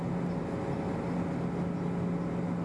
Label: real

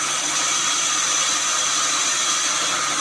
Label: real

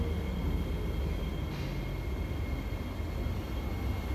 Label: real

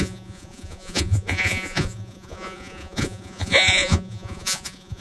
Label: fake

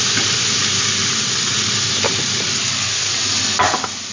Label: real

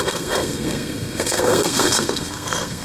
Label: fake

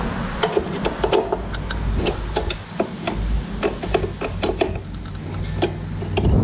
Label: real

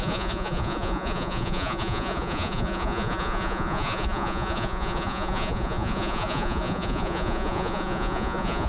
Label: fake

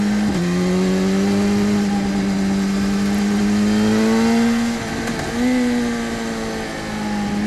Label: real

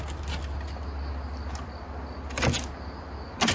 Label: real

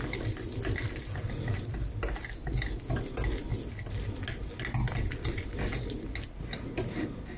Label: real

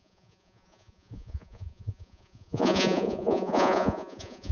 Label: fake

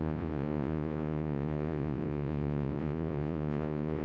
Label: fake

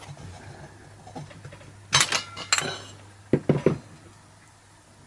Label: real